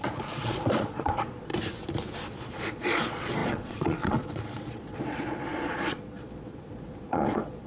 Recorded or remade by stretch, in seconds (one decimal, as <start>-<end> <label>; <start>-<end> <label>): 0.0-1.5 remade; 1.5-2.4 recorded; 2.4-7.7 remade